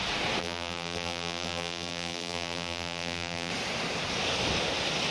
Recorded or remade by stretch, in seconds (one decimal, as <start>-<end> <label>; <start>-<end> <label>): 0.0-0.4 recorded; 0.4-3.5 remade; 3.5-5.1 recorded